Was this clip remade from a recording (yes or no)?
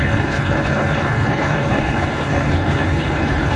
yes